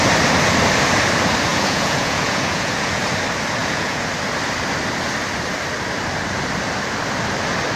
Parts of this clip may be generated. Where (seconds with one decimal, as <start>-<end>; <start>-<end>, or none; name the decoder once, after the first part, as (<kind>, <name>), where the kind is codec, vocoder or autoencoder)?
1.5-3.0 (vocoder, Vocos); 3.6-4.1